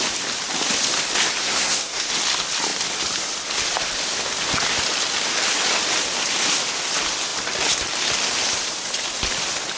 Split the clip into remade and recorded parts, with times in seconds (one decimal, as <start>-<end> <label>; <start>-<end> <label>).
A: 0.0-1.4 recorded; 1.4-2.1 remade; 2.1-9.8 recorded